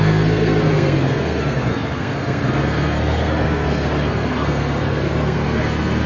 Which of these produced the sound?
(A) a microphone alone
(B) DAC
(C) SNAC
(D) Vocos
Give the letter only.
C